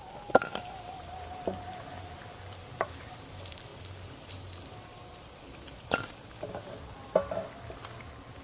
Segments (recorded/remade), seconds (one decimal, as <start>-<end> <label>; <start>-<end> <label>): 0.0-8.4 recorded